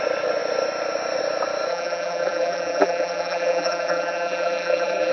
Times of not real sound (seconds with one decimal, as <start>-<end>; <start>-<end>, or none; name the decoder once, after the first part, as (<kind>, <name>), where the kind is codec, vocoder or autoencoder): 1.7-5.1 (vocoder, BigVGAN v2)

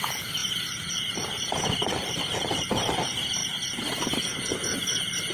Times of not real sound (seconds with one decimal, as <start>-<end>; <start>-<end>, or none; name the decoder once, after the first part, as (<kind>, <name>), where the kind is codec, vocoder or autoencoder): 0.0-3.4 (vocoder, BigVGAN v2); 4.5-5.3

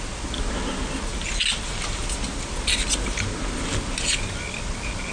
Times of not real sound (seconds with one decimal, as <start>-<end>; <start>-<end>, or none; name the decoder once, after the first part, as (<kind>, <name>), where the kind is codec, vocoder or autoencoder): none

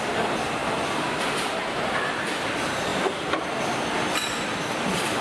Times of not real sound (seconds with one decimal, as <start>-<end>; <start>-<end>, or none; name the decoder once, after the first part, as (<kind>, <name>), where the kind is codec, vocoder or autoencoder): 0.0-5.2 (vocoder, BigVGAN v2)